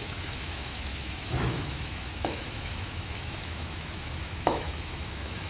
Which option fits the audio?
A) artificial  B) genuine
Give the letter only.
A